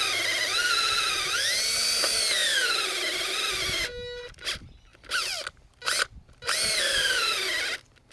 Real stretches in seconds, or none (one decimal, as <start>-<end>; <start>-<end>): 0.0-8.1